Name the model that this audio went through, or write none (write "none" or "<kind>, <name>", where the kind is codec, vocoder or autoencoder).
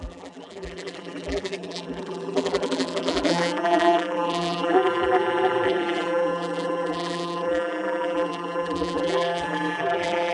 vocoder, BigVGAN v2